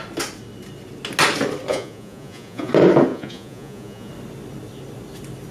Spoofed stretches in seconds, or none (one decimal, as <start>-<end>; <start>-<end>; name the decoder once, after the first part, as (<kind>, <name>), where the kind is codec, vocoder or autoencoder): 1.7-2.7 (vocoder, Vocos); 3.1-4.1